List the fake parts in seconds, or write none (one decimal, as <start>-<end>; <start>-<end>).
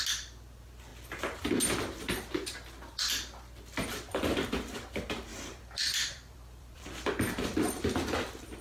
5.3-7.7